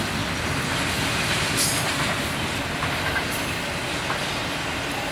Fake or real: real